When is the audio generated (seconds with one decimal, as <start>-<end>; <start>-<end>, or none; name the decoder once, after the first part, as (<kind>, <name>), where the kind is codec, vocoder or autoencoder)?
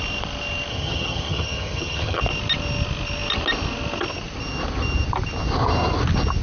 0.7-2.2 (vocoder, HiFi-GAN)